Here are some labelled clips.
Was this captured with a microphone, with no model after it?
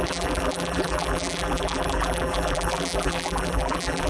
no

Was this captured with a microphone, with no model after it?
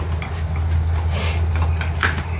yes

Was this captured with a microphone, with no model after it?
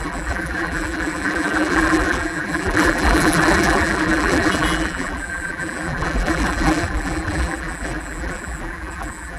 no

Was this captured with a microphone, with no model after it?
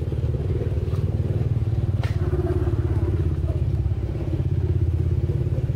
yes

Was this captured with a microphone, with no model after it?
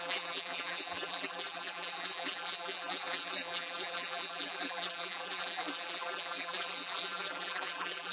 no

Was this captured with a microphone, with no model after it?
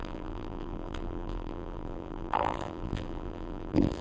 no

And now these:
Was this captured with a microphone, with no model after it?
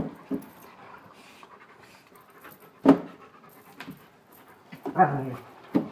yes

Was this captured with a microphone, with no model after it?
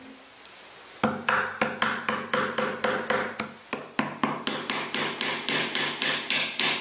yes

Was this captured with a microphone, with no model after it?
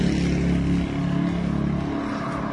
yes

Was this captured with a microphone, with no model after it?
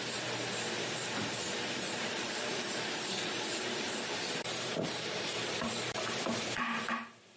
no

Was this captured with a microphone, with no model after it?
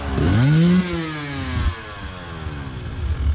yes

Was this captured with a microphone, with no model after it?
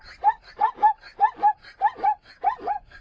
yes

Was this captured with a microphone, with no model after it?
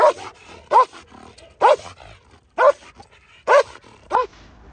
yes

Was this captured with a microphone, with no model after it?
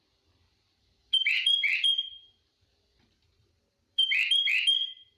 no